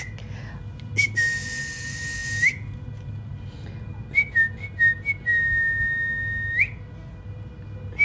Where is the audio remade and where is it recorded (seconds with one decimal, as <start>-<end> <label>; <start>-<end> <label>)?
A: 0.0-8.0 recorded